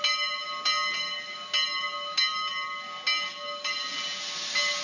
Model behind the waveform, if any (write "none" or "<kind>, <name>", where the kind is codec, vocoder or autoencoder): none